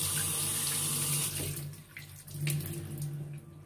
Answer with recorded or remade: recorded